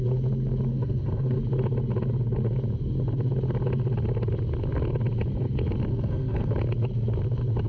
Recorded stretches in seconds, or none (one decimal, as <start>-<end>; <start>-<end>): 0.0-0.7; 1.4-5.9; 6.5-7.7